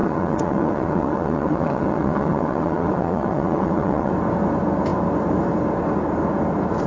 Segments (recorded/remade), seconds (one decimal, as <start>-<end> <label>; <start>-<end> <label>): 0.0-4.1 remade; 4.1-6.9 recorded